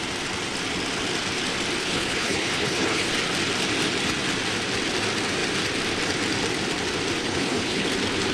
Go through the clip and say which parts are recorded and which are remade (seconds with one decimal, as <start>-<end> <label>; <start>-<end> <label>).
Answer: 0.0-1.8 recorded; 1.8-3.1 remade; 3.1-7.2 recorded; 7.2-7.9 remade; 7.9-8.3 recorded